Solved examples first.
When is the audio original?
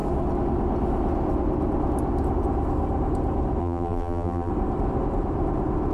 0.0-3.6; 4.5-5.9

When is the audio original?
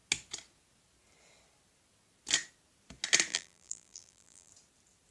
0.0-3.3; 4.5-5.1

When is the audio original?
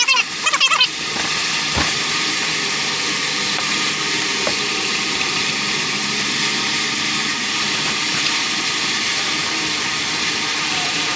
0.9-1.9; 9.9-10.6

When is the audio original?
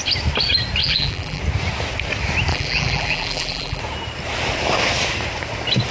0.0-0.8; 1.4-2.5; 3.8-5.9